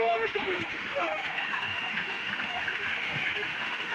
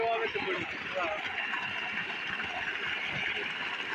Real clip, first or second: second